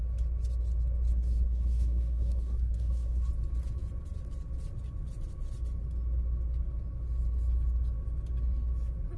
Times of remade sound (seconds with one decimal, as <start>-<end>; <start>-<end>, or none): 1.1-3.3

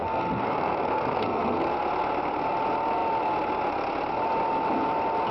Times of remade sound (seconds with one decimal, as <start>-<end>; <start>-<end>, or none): 0.0-1.7

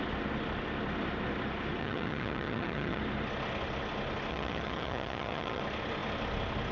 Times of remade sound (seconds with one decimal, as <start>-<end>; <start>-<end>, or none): 1.8-3.0; 4.3-5.6

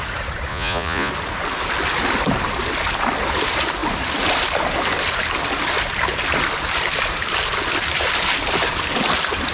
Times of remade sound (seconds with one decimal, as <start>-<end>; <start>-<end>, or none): 0.5-1.1

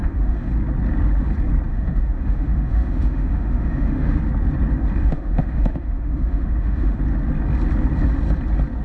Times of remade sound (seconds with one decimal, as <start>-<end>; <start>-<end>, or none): 0.0-0.5; 1.7-4.2; 5.0-7.0

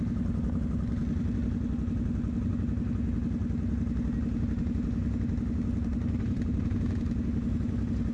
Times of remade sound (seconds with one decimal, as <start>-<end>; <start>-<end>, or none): 5.9-6.6

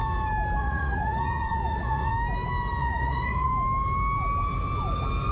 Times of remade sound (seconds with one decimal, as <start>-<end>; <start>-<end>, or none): 0.6-2.1; 2.8-3.5